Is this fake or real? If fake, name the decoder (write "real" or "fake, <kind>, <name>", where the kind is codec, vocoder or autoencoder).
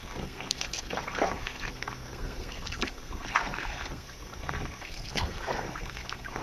fake, codec, SNAC